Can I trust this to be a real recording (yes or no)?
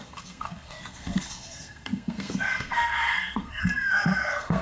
no